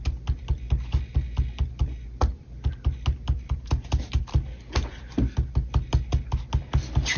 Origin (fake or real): real